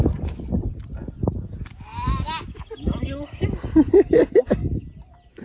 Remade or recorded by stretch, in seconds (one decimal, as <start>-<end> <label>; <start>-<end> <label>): 0.0-5.4 recorded